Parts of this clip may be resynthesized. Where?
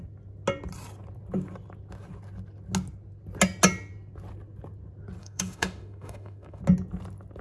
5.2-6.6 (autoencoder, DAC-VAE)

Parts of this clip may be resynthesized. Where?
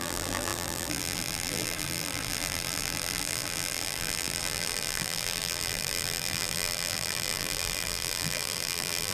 0.0-9.1 (vocoder, BigVGAN v2)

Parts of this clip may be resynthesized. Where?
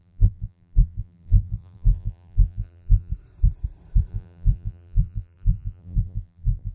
0.0-3.1 (vocoder, BigVGAN v2); 4.1-6.7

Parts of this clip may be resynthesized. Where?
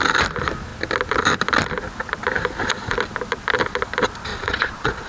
4.3-5.1 (vocoder, Vocos)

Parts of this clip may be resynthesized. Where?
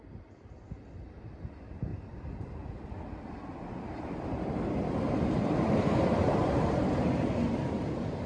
1.9-6.9 (vocoder, BigVGAN v2)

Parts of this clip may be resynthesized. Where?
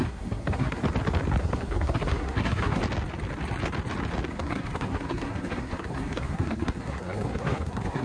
0.0-0.8 (codec, SNAC); 1.4-2.8; 4.3-8.0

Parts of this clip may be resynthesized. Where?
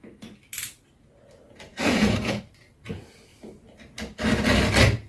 1.7-2.4 (vocoder, Vocos)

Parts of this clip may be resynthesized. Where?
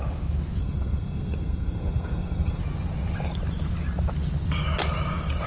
0.6-2.6 (codec, SNAC)